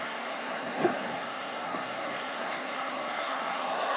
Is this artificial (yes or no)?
yes